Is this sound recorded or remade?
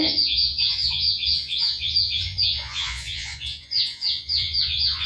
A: remade